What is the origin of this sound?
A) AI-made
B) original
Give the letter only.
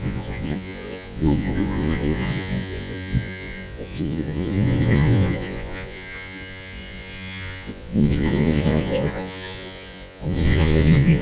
A